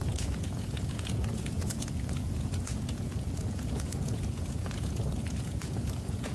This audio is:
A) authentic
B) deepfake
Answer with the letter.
B